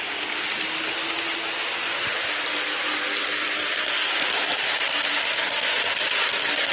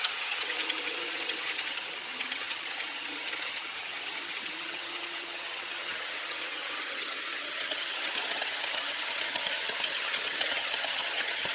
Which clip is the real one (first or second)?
first